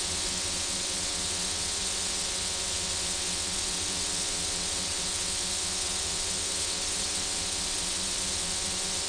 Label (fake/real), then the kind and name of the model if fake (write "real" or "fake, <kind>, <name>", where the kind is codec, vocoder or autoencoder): fake, vocoder, WaveNeXt